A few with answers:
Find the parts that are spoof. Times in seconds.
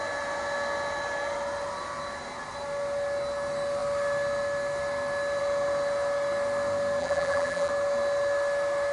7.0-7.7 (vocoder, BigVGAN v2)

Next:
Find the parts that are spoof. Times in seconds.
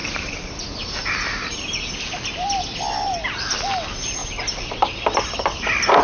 0.0-1.6 (vocoder, BigVGAN v2); 4.2-5.0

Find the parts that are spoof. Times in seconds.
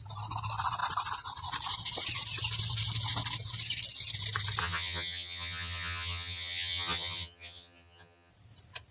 4.6-8.3 (vocoder, HiFi-GAN)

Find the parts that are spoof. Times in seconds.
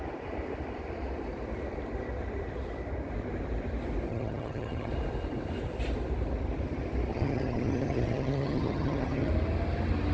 4.1-4.9 (vocoder, HiFi-GAN); 7.1-9.3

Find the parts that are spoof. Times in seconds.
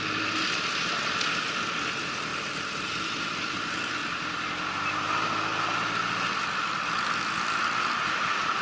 2.3-3.5 (vocoder, BigVGAN v2)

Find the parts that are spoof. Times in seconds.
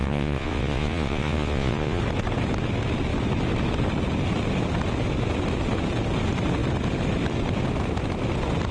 0.0-2.0 (vocoder, Vocos)